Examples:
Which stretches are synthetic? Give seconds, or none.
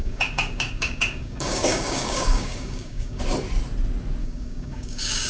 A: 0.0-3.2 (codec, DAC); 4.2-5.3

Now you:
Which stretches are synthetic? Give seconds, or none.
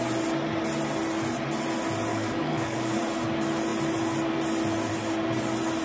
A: 2.1-3.0 (codec, DAC)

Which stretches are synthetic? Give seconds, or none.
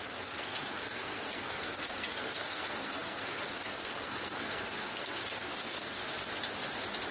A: 0.0-6.0 (codec, SNAC)